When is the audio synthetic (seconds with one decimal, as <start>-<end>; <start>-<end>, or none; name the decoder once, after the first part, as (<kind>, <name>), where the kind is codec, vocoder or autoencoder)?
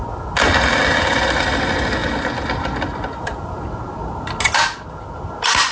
none